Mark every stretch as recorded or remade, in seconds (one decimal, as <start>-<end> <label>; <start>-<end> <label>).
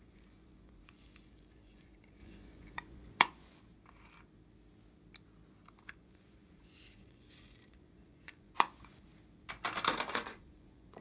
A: 0.0-3.7 remade; 3.7-5.9 recorded; 5.9-9.1 remade; 9.1-10.1 recorded; 10.1-11.0 remade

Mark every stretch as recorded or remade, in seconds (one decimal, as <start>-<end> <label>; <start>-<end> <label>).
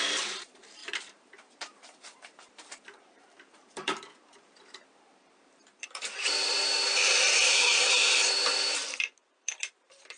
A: 0.0-10.2 remade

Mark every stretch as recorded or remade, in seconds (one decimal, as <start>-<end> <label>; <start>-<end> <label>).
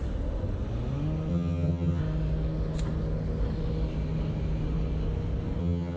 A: 0.0-1.3 recorded; 1.3-2.0 remade; 2.0-5.6 recorded; 5.6-6.0 remade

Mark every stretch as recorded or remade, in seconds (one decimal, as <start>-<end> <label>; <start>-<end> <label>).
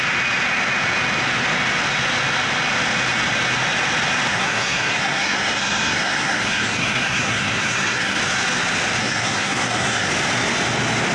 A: 0.0-4.3 recorded; 4.3-8.2 remade; 8.2-9.0 recorded; 9.0-10.1 remade; 10.1-11.1 recorded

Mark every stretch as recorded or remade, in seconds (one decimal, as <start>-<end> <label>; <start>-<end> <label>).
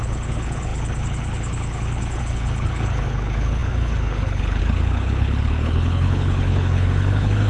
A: 0.0-7.5 remade